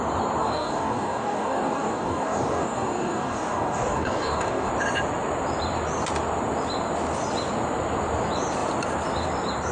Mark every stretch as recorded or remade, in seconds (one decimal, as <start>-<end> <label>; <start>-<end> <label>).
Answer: 0.0-0.4 recorded; 0.4-4.7 remade; 4.7-9.7 recorded